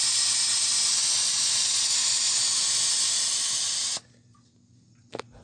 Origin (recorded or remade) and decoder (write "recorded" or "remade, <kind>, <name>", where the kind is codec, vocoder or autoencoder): recorded